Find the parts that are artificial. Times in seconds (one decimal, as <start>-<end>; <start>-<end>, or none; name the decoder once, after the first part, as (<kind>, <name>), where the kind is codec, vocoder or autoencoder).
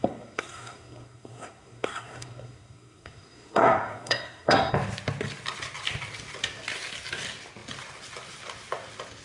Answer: 0.0-4.7 (codec, SNAC)